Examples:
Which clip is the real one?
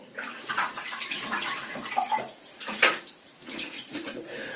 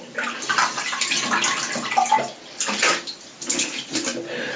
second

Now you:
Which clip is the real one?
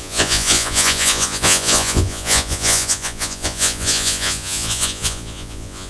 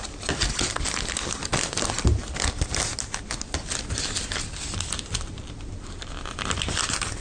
second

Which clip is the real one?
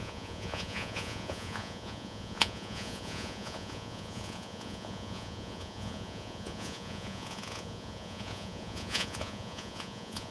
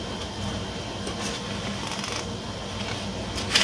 second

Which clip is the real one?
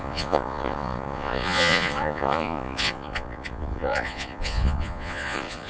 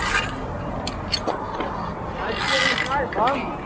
second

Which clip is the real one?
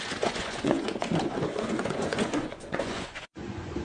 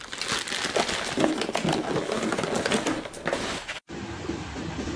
second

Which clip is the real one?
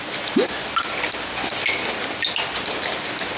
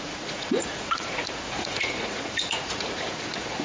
first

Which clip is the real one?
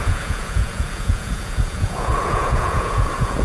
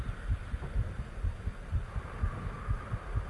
second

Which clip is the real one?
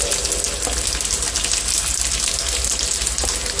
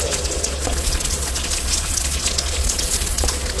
first